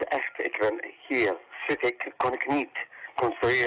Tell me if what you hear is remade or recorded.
recorded